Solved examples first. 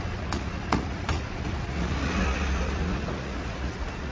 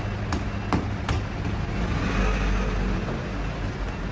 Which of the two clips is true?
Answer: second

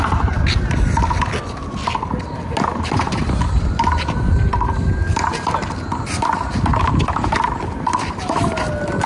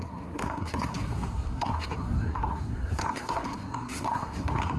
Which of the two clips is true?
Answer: first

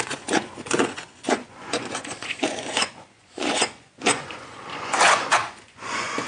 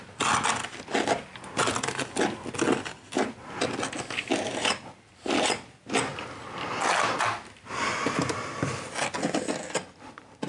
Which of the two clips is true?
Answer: second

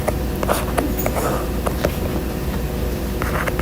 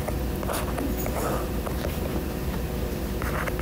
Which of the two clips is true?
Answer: first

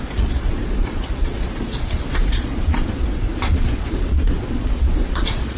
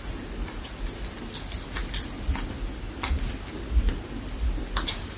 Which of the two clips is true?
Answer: second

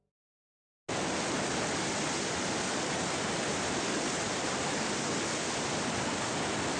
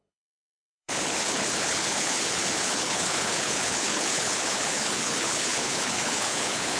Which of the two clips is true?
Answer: first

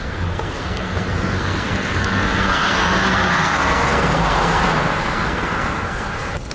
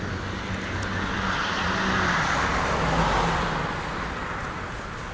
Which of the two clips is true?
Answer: second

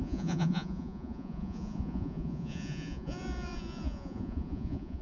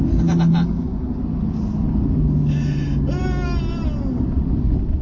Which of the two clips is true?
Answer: second